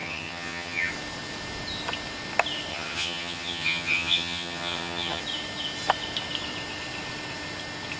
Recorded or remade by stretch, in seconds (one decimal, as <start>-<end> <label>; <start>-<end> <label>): 0.0-0.9 remade; 0.9-2.7 recorded; 2.7-5.2 remade; 5.2-8.0 recorded